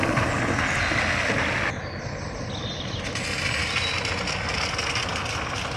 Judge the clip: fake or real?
real